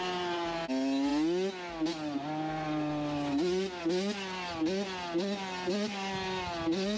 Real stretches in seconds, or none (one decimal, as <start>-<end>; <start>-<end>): 0.0-7.0